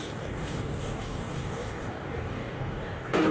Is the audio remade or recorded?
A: remade